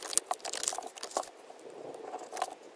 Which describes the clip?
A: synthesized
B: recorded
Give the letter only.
B